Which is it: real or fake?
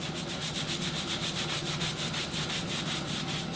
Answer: fake